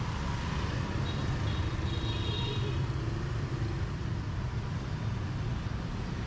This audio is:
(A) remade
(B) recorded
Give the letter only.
B